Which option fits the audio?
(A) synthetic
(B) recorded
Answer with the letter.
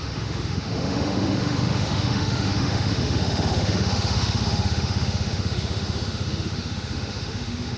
A